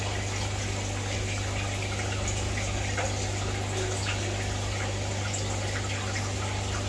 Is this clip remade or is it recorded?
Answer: recorded